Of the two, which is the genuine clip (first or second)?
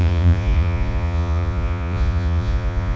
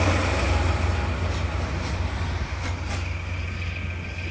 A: second